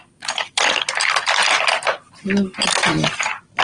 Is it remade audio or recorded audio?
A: remade